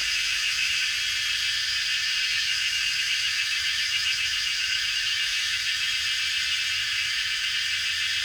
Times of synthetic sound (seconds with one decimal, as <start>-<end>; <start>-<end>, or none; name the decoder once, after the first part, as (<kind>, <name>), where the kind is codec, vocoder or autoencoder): 0.0-0.9 (autoencoder, DAC-VAE); 1.9-5.9; 6.8-7.5